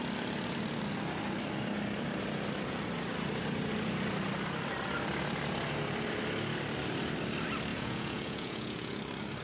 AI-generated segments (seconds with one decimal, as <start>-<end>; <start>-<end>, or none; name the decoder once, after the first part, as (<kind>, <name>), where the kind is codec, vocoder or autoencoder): 7.7-9.0 (vocoder, Vocos)

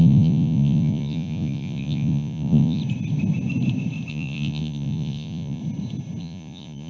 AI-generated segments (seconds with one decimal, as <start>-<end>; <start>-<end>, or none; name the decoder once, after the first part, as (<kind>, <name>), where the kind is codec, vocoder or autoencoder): 0.0-2.8 (vocoder, Vocos); 4.1-5.6; 6.2-6.9

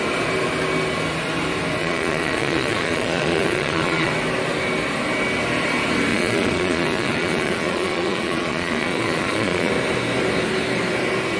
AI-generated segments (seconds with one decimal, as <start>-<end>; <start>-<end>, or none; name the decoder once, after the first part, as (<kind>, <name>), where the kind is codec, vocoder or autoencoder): 1.8-4.1 (vocoder, Vocos); 6.1-9.7

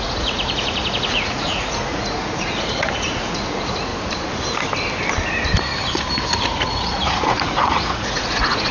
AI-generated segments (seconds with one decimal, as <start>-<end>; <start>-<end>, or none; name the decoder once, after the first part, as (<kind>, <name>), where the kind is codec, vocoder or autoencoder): 0.0-3.9 (vocoder, Vocos); 6.3-8.7

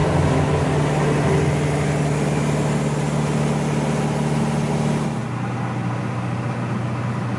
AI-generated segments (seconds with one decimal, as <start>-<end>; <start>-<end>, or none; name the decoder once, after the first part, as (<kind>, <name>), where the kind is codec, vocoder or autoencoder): none